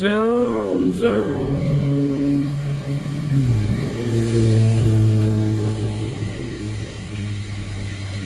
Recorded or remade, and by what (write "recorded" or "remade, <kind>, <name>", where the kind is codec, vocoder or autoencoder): remade, codec, SNAC